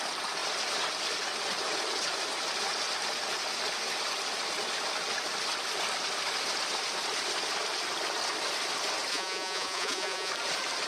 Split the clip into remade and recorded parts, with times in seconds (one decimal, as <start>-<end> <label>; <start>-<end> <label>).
0.0-9.1 recorded; 9.1-10.3 remade; 10.3-10.9 recorded